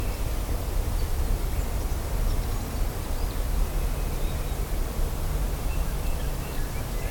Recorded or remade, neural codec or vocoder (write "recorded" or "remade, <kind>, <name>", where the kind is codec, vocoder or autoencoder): remade, vocoder, BigVGAN v2